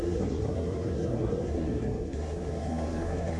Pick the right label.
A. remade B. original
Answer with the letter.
A